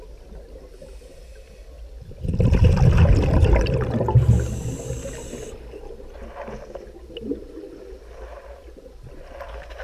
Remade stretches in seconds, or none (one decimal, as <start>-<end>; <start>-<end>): none